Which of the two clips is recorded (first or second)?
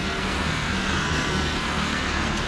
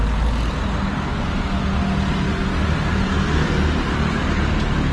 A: second